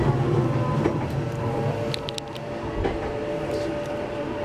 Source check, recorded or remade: recorded